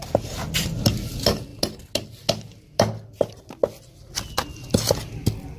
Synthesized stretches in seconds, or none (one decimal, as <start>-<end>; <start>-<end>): none